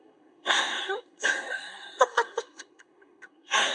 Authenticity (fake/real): fake